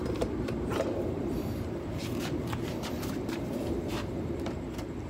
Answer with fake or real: fake